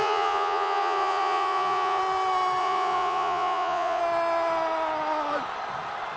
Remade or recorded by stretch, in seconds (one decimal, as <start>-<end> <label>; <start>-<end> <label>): 0.0-2.0 remade; 2.0-2.6 recorded; 2.6-4.0 remade; 4.0-6.2 recorded